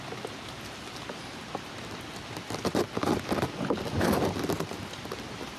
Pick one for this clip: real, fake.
real